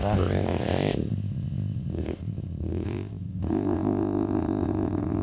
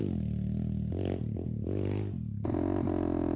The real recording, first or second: second